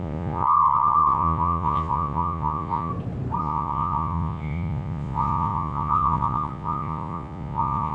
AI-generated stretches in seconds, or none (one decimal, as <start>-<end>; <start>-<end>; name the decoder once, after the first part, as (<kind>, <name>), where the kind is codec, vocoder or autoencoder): 0.0-2.9 (vocoder, Vocos); 3.4-7.9